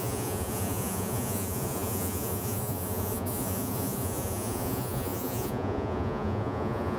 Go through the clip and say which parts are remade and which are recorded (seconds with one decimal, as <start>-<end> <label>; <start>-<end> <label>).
0.0-7.0 remade